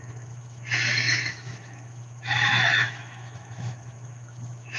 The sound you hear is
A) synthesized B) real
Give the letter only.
A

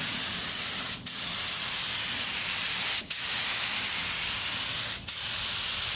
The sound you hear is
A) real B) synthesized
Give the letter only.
A